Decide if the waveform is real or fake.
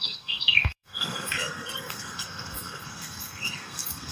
fake